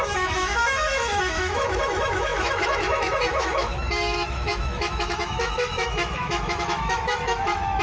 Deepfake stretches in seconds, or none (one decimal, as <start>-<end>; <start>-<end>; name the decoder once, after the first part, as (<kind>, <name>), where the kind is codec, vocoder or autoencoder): 0.0-7.8 (autoencoder, DAC-VAE)